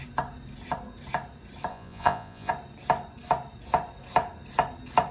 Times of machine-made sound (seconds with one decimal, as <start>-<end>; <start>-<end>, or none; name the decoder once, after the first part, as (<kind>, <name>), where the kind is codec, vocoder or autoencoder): 1.7-2.5 (vocoder, Vocos)